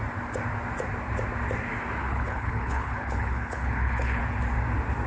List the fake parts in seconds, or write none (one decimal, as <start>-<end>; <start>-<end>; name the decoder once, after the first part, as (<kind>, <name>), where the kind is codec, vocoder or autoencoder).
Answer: 2.0-4.2 (codec, HILCodec)